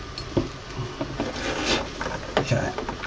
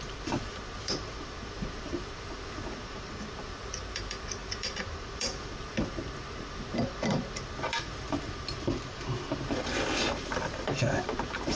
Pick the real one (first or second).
first